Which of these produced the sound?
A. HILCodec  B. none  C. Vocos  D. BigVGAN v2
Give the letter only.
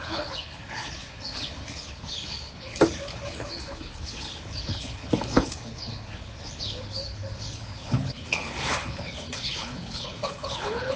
A